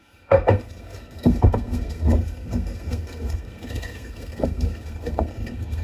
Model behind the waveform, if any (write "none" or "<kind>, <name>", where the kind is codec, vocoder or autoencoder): codec, SNAC